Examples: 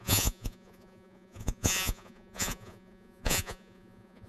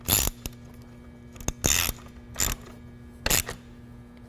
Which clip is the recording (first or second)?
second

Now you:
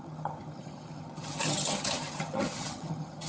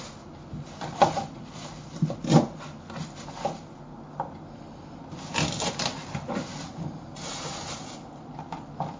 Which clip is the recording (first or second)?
second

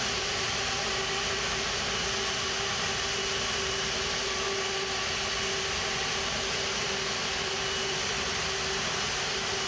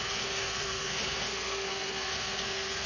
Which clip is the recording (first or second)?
first